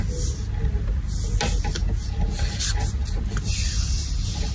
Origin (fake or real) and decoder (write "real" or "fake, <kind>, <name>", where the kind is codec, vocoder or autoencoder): real